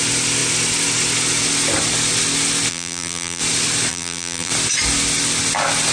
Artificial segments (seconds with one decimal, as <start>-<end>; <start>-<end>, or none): 2.7-3.4; 3.9-4.5